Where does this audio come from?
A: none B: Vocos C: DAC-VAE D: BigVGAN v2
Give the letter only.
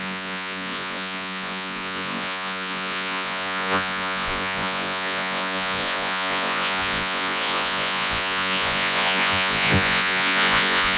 B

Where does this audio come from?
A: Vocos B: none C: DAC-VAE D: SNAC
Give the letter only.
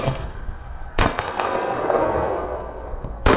D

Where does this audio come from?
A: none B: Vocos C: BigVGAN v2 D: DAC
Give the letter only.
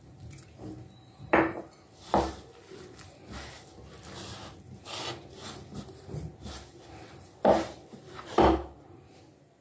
A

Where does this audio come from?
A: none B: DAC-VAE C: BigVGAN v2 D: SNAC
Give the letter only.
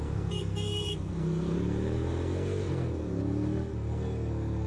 D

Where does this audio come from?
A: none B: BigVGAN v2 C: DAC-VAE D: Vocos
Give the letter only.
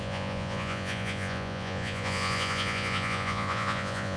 D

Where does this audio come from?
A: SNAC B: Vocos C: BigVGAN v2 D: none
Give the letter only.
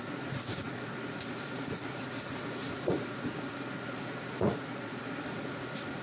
B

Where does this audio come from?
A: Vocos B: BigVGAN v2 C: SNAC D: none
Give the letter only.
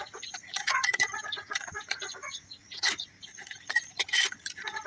A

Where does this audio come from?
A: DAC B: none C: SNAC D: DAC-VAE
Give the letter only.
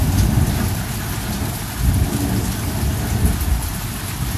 B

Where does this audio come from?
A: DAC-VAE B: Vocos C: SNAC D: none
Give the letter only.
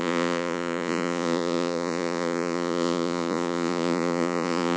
B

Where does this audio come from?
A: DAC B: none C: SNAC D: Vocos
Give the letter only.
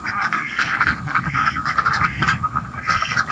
C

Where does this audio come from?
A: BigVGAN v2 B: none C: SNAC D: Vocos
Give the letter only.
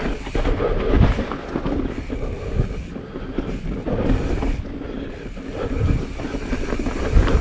B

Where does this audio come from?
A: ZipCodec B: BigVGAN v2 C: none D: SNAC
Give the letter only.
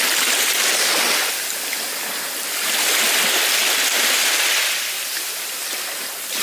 C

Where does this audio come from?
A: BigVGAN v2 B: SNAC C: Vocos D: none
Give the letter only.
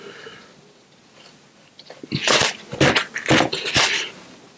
D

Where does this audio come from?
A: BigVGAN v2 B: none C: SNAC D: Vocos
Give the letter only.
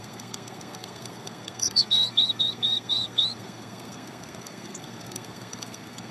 C